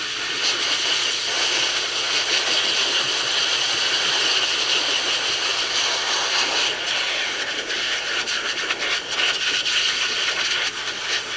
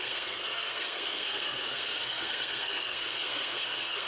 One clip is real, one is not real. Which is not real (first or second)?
second